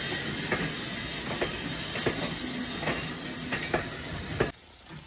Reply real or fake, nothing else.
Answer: real